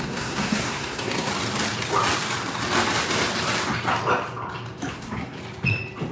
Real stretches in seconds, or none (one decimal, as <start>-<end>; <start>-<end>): 1.3-4.9; 5.4-6.1